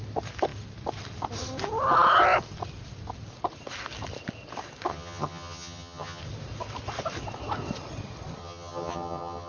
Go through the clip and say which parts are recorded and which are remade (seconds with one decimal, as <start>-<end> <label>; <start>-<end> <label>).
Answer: 0.0-4.9 recorded; 4.9-6.2 remade; 6.2-8.4 recorded; 8.4-9.5 remade